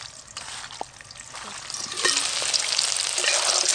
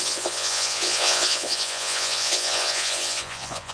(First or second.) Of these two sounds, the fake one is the second